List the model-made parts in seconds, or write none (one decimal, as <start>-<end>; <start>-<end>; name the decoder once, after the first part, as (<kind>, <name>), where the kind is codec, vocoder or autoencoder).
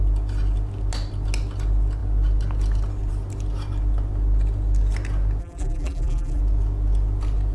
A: 5.4-6.4 (vocoder, BigVGAN v2)